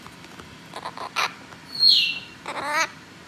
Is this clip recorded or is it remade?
recorded